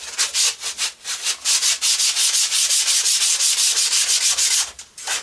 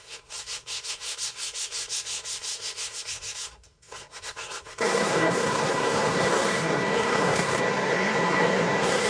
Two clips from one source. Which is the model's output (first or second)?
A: second